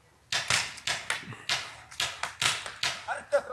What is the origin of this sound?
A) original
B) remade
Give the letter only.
A